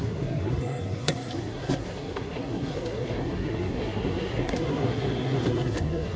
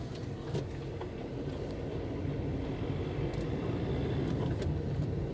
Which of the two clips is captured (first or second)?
second